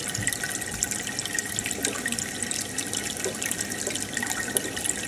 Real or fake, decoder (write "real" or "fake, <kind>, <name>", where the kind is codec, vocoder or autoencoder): real